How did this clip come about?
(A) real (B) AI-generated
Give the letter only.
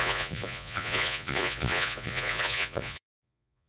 B